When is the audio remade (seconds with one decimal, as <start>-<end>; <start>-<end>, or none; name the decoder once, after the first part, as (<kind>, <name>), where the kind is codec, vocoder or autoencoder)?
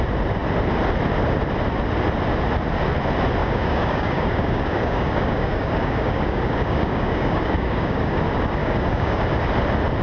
3.4-8.2 (codec, DAC); 8.6-9.2